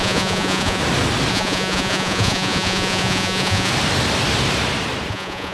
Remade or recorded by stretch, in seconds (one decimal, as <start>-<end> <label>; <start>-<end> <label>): 0.0-0.8 remade; 0.8-1.3 recorded; 1.3-3.7 remade; 3.7-5.1 recorded; 5.1-5.5 remade